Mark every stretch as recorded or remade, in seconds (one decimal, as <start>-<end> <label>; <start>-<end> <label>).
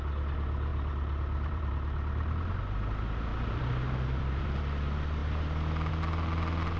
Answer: 0.0-0.7 recorded; 0.7-1.7 remade; 1.7-3.3 recorded; 3.3-4.6 remade; 4.6-6.8 recorded